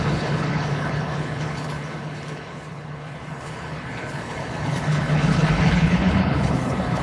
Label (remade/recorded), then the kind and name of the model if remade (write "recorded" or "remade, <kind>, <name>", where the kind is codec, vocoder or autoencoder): remade, codec, HILCodec